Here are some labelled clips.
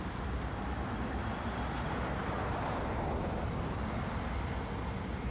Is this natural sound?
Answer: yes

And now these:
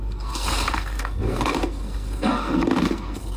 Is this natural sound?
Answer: no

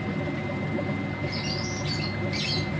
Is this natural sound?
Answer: yes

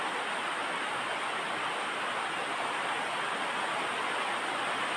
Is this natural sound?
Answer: yes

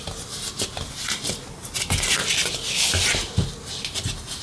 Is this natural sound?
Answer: yes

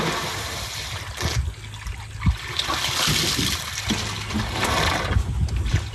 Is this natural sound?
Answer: yes